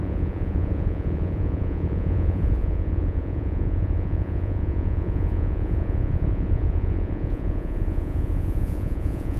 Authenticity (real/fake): fake